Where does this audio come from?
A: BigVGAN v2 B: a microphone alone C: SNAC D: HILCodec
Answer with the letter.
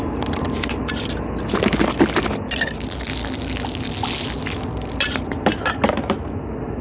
B